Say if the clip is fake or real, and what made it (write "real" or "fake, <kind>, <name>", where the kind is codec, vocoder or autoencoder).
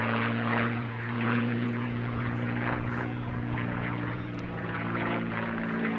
fake, vocoder, Vocos